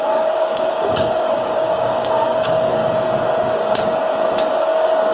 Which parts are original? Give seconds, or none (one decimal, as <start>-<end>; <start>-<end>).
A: 2.8-3.4; 4.0-4.5

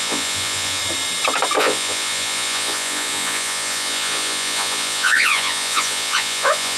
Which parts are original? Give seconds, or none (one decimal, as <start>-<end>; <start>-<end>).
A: 0.8-1.6

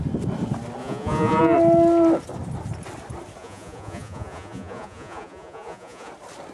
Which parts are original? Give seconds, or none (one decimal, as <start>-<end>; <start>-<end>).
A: 0.0-0.8; 1.4-3.4; 6.1-6.5

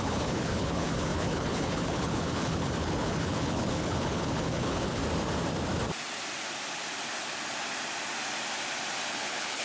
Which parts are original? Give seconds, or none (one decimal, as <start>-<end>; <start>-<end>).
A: 5.0-9.1

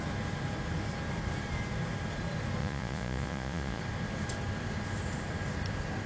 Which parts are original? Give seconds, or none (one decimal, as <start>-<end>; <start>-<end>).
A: 0.0-2.6; 3.8-6.1

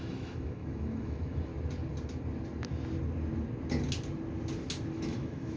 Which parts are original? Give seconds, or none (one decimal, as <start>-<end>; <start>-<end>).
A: 1.5-4.9

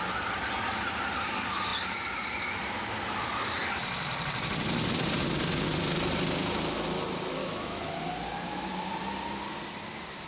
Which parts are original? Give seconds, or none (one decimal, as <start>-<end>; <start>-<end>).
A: 0.0-7.4; 7.9-10.3